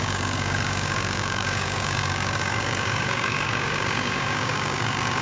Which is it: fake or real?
fake